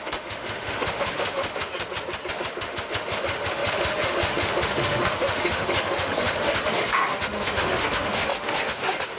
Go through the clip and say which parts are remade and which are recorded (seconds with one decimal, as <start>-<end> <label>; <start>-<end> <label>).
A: 0.0-1.7 remade; 1.7-2.3 recorded; 2.3-9.2 remade